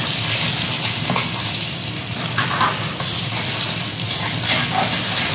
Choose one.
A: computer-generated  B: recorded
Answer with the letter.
B